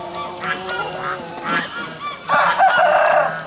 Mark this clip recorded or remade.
recorded